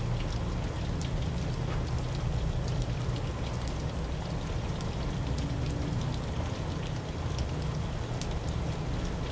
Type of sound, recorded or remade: recorded